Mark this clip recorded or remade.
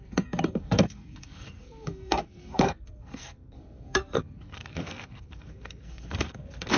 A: remade